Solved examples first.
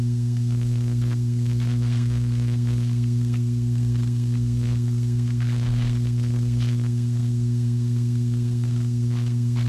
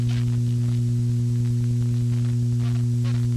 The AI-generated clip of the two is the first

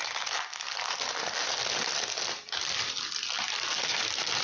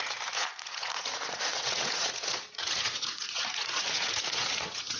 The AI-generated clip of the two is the second